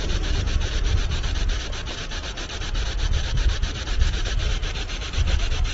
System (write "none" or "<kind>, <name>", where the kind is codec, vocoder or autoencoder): none